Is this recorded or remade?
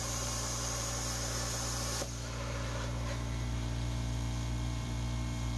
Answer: remade